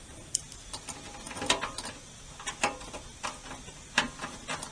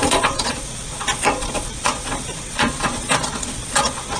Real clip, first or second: first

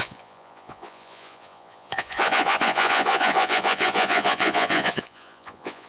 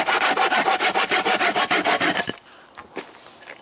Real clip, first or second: second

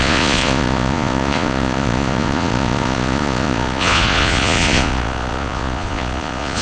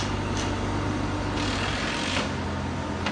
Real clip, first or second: second